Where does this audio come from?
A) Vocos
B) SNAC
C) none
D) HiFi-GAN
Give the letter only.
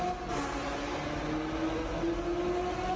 C